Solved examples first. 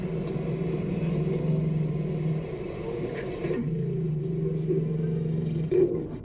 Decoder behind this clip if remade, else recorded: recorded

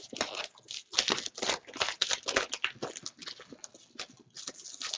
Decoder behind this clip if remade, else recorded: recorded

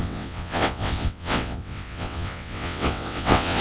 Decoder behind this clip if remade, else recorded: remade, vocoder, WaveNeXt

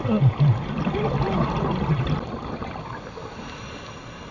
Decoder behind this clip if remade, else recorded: recorded